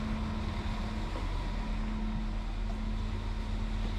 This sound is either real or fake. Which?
real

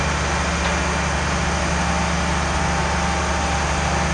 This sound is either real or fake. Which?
real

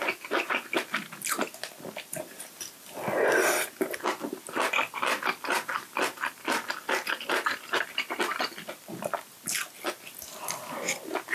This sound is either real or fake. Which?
real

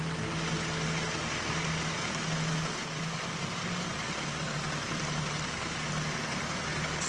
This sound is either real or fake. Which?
real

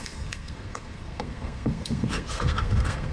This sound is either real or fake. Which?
fake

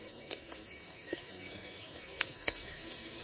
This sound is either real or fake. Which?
fake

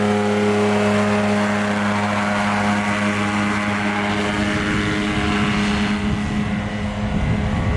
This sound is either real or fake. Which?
real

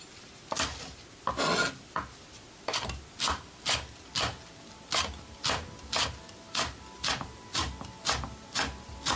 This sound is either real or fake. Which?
real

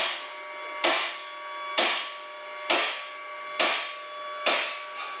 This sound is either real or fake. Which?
real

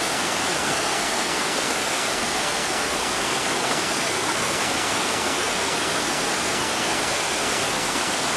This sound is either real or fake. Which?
fake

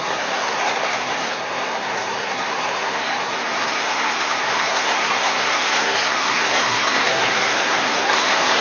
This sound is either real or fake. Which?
fake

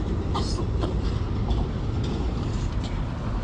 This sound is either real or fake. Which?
real